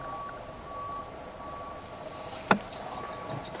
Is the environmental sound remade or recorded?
recorded